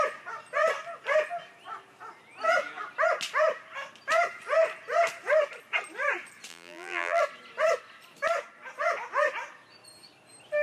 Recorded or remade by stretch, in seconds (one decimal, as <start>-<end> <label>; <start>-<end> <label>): 0.0-6.5 recorded; 6.5-7.2 remade; 7.2-10.6 recorded